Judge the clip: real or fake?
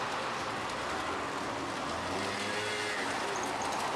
real